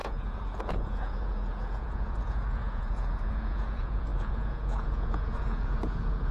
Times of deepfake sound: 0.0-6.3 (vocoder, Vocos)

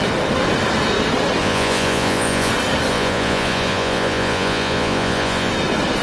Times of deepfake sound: 1.4-2.5 (vocoder, Vocos); 2.9-5.5

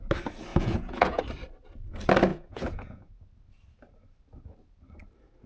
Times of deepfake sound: 0.5-1.2 (vocoder, Vocos); 2.3-3.2

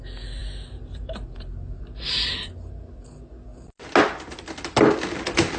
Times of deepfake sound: none

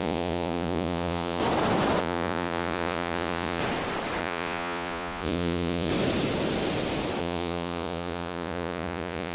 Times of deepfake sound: 0.0-1.4 (vocoder, Vocos); 2.0-3.6; 4.2-5.9; 7.2-9.3

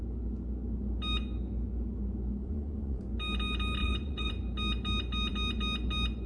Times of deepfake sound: 2.4-3.0 (vocoder, Vocos); 3.8-4.3